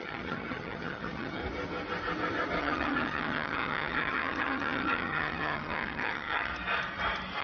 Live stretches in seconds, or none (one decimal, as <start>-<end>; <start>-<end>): 1.4-2.6; 6.5-7.4